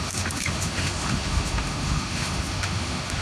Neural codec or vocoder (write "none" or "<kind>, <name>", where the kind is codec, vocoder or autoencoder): autoencoder, DAC-VAE